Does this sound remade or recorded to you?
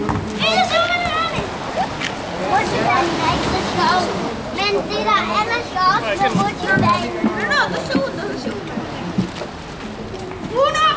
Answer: recorded